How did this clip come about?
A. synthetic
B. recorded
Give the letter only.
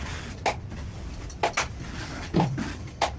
B